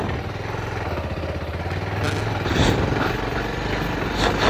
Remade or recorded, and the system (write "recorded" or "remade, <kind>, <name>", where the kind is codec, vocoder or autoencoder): recorded